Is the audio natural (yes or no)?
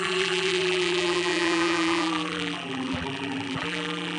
no